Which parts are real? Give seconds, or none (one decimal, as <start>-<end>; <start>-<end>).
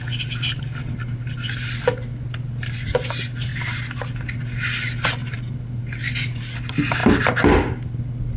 0.0-8.4